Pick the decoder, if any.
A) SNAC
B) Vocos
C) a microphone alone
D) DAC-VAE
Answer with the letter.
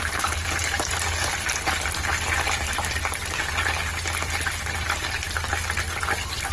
C